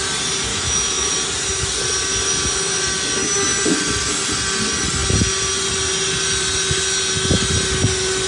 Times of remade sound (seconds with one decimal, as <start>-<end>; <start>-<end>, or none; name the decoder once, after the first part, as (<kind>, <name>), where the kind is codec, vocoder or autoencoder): 0.5-1.1 (autoencoder, DAC-VAE)